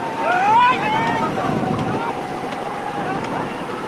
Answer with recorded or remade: remade